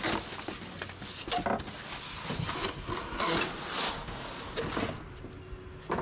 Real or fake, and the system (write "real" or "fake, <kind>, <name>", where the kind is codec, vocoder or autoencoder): real